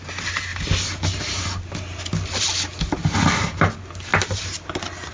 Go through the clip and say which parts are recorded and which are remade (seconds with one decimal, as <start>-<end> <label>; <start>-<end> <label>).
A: 0.0-5.1 recorded